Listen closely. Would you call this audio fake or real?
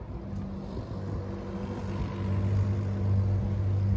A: real